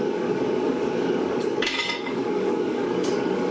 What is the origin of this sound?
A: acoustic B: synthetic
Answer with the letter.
B